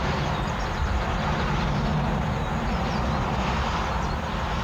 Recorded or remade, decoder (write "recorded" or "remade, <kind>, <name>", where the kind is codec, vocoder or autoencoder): recorded